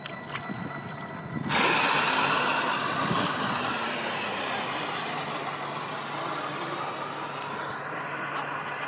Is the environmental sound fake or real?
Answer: real